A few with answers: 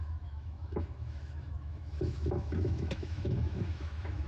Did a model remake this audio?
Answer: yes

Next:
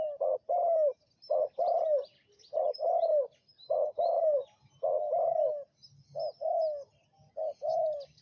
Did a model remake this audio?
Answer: no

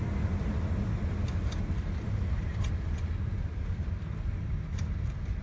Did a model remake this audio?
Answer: no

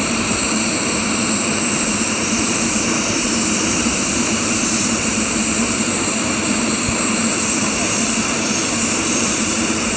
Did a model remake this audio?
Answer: yes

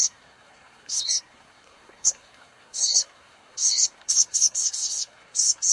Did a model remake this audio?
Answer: yes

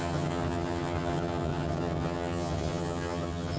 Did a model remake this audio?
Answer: yes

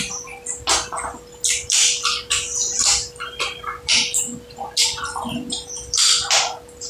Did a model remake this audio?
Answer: no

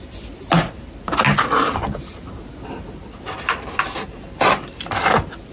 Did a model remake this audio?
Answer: no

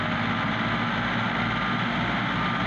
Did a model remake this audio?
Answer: no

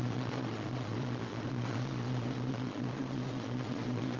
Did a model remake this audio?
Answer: yes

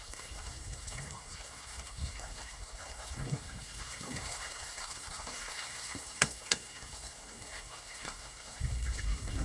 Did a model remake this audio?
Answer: yes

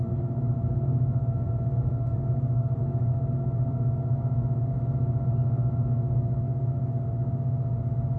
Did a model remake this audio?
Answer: yes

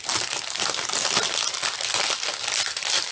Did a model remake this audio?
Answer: no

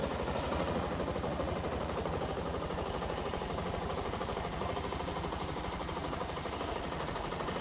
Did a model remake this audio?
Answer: yes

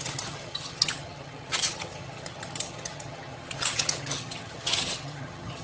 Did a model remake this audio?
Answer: yes